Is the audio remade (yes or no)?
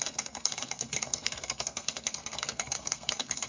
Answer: yes